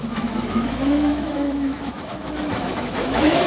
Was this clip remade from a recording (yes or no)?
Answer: yes